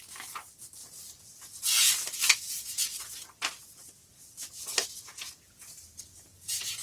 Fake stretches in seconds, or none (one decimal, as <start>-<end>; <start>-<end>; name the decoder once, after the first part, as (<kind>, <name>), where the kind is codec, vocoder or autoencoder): 0.8-1.9 (vocoder, Vocos); 5.1-6.8